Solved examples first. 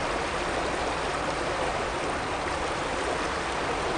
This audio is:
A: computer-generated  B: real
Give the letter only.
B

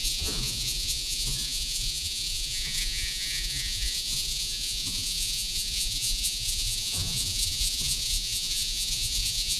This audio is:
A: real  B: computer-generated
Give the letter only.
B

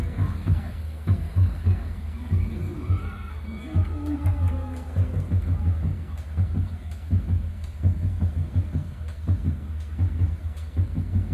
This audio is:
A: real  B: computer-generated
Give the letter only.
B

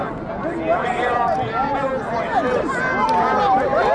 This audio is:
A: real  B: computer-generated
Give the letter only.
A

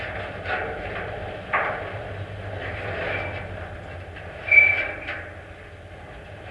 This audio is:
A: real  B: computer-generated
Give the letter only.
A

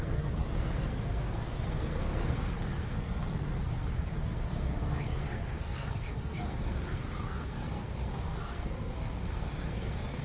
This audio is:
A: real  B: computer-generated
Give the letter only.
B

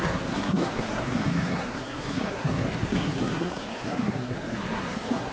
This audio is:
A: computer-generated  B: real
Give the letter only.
A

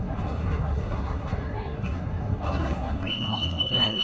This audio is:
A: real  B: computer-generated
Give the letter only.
B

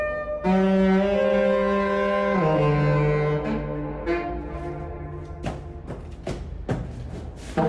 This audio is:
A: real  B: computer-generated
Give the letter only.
A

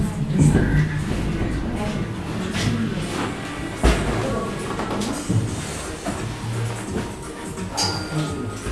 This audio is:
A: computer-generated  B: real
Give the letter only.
B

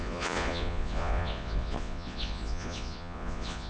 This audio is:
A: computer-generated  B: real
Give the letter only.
A